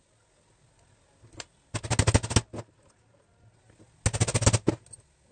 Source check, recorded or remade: recorded